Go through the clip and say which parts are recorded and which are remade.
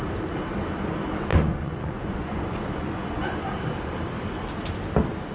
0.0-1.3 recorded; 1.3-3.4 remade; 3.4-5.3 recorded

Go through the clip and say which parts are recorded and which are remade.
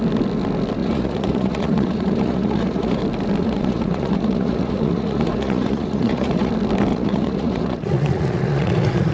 0.0-0.8 recorded; 0.8-3.0 remade; 3.0-3.4 recorded; 3.4-6.5 remade; 6.5-6.9 recorded; 6.9-9.1 remade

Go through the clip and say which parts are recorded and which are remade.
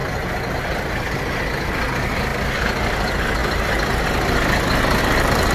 0.0-5.5 recorded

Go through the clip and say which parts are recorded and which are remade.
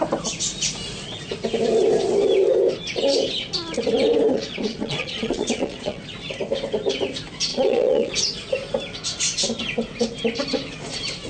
0.0-4.3 recorded; 4.3-6.0 remade; 6.0-7.5 recorded; 7.5-8.1 remade; 8.1-11.3 recorded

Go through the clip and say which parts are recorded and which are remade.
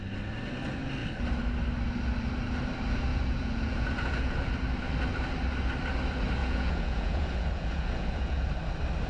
0.0-3.1 recorded; 3.1-4.5 remade; 4.5-6.4 recorded; 6.4-8.5 remade; 8.5-9.1 recorded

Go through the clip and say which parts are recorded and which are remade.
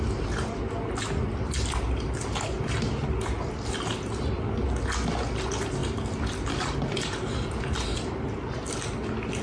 0.0-9.4 recorded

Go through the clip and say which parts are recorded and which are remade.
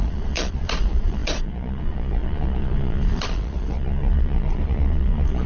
0.0-5.5 remade